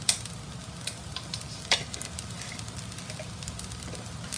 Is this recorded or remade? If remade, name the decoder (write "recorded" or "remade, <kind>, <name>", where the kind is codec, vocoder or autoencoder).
recorded